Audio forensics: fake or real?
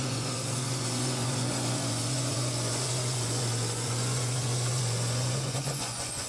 fake